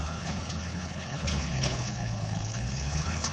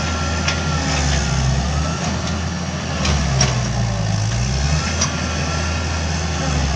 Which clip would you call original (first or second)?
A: second